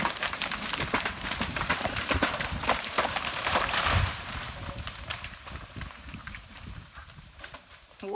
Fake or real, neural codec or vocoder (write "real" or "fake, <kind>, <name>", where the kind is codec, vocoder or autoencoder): fake, vocoder, BigVGAN v2